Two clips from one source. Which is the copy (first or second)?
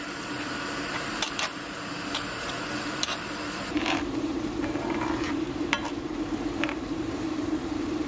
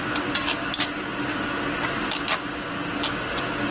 first